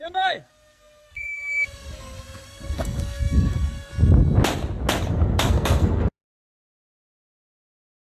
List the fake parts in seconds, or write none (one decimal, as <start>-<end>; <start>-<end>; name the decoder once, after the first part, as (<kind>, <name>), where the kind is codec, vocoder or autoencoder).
0.0-3.9 (codec, SNAC); 5.1-8.1